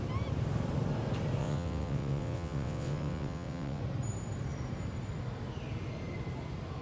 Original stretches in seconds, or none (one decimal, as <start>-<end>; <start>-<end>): 0.0-1.4; 3.8-6.8